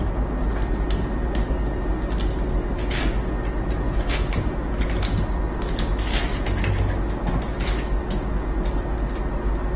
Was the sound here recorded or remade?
recorded